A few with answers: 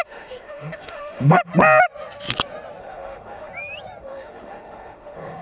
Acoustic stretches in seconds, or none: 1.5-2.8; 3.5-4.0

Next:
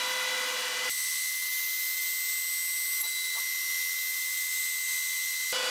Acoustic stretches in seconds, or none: 0.0-5.7

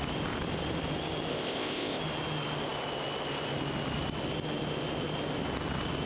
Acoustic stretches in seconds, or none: 0.0-1.3; 2.0-6.1

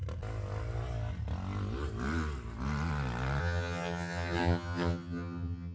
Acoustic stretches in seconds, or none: 0.0-3.4

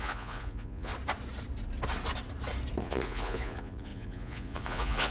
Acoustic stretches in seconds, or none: 0.9-2.8

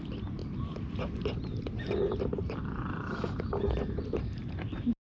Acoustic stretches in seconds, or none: 0.0-5.1